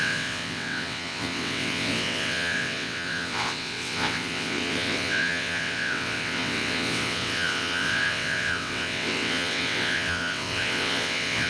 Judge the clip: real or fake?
fake